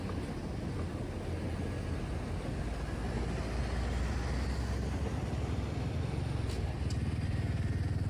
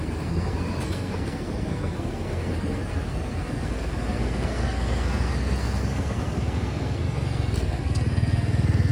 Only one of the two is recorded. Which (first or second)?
first